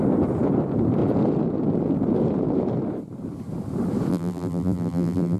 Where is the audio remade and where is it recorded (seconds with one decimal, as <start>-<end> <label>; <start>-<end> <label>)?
0.0-4.1 recorded; 4.1-5.4 remade